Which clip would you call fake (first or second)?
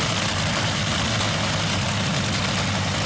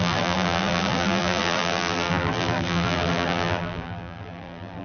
second